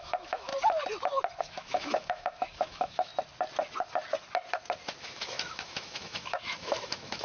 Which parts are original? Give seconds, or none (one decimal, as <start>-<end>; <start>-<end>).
0.5-1.4; 3.1-5.0